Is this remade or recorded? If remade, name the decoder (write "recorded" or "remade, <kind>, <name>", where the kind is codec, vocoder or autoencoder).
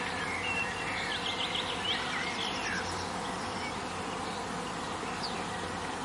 recorded